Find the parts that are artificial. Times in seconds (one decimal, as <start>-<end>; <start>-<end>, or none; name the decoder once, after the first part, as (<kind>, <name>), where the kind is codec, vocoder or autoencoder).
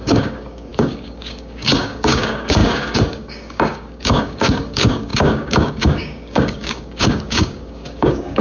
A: 0.0-8.4 (codec, DAC)